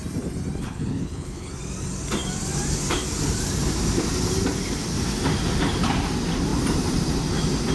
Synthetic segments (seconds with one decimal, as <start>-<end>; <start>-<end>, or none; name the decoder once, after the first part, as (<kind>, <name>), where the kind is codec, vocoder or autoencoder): 0.6-1.5 (codec, HILCodec)

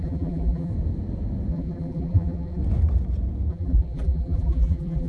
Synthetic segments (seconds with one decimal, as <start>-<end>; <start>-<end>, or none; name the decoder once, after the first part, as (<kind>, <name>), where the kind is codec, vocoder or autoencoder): 0.0-0.7 (vocoder, BigVGAN v2); 1.5-2.6; 3.5-5.1

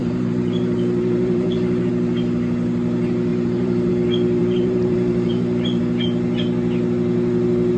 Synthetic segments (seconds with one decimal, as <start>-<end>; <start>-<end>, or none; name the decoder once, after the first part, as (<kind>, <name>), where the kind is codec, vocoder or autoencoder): 0.0-1.9 (vocoder, BigVGAN v2); 3.3-3.9; 4.4-5.8

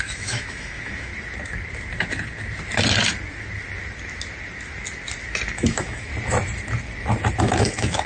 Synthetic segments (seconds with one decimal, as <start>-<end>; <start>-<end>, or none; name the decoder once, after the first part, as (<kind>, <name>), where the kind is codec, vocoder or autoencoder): 0.0-1.1 (autoencoder, DAC-VAE); 5.5-6.1; 7.4-8.1

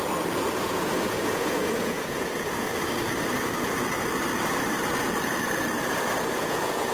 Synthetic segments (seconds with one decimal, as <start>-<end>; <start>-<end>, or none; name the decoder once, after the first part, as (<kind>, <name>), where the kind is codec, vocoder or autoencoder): 0.6-2.7 (vocoder, Vocos); 6.3-6.9

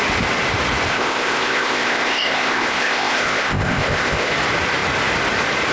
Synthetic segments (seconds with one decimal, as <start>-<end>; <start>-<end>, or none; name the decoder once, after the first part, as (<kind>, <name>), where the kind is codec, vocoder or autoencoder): 0.9-4.3 (codec, ZipCodec)